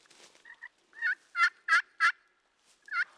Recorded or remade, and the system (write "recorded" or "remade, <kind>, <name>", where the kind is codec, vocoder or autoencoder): recorded